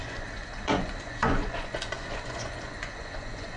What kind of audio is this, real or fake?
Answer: fake